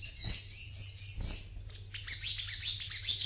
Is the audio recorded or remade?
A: recorded